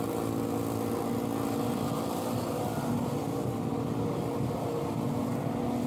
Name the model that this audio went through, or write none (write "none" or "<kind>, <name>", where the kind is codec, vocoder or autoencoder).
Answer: none